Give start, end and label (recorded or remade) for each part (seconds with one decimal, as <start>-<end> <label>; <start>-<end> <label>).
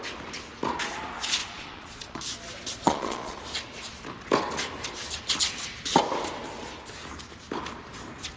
0.0-1.4 recorded; 1.4-2.2 remade; 2.2-2.7 recorded; 2.7-3.4 remade; 3.4-8.4 recorded